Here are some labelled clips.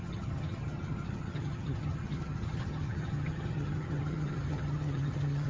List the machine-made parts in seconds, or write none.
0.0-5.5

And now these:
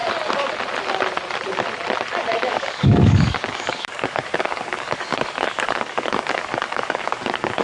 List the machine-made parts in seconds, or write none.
2.5-7.6